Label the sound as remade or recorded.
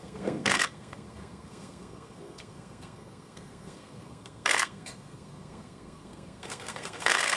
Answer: remade